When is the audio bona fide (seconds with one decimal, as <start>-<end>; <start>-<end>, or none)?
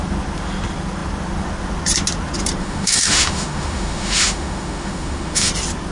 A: 0.0-2.6; 5.5-5.9